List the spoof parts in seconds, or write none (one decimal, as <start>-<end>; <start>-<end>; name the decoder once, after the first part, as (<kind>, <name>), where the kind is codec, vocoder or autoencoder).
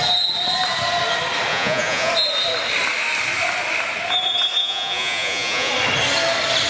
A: 1.5-2.1 (vocoder, Vocos); 4.6-5.7